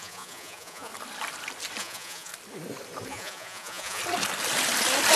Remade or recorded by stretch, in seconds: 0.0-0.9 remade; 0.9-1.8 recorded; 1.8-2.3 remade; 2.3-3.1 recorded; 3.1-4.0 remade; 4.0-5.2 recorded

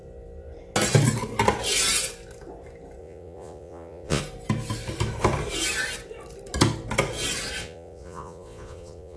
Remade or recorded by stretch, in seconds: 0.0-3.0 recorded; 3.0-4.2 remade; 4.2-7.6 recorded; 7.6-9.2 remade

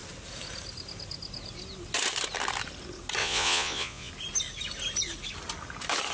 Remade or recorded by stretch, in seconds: 0.0-3.2 recorded; 3.2-4.1 remade; 4.1-6.1 recorded

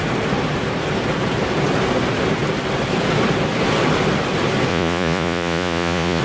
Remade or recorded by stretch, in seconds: 0.0-4.7 recorded; 4.7-6.2 remade

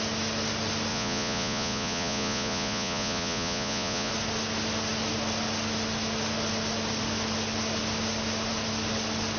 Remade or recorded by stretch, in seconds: 0.0-0.9 recorded; 0.9-4.1 remade; 4.1-9.4 recorded

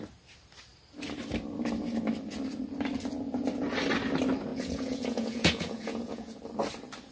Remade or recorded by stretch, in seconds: 0.0-4.5 recorded; 4.5-6.4 remade; 6.4-7.1 recorded

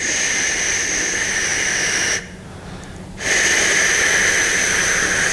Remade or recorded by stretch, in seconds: 0.0-5.3 recorded